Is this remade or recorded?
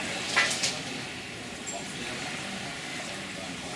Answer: recorded